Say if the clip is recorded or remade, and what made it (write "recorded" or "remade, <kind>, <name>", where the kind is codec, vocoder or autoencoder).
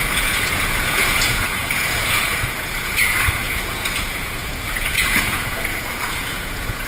remade, vocoder, Vocos